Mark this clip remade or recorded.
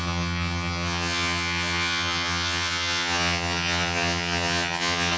remade